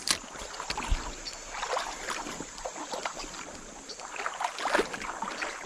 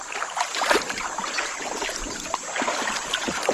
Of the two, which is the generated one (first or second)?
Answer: second